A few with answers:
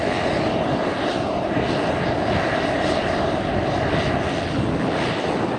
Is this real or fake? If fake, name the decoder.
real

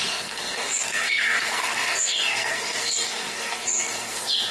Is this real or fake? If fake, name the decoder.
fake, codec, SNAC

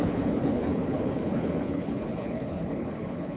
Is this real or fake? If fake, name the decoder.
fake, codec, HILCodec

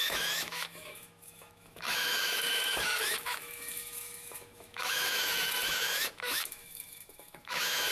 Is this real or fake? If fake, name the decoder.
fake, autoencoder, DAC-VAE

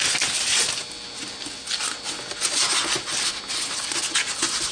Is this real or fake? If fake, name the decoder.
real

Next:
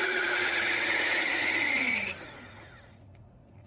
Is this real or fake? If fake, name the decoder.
fake, vocoder, Vocos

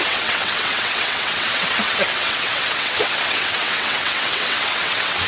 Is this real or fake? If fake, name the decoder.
fake, vocoder, WaveNeXt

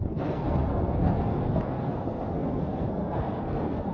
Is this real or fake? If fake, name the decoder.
fake, codec, SNAC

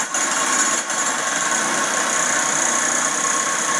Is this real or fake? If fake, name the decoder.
real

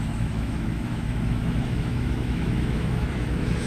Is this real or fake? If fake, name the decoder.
fake, autoencoder, DAC-VAE